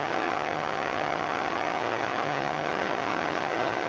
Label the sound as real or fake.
fake